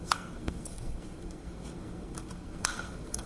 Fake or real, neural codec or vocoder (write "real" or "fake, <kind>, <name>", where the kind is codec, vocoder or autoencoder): fake, codec, SNAC